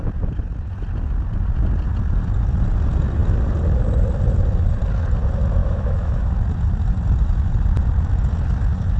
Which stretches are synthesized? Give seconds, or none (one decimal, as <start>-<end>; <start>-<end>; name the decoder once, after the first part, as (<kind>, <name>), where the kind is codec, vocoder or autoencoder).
5.6-6.3 (autoencoder, DAC-VAE)